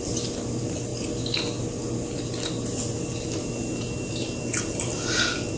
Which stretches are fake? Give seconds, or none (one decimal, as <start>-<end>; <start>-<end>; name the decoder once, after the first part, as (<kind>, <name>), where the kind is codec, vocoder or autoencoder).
none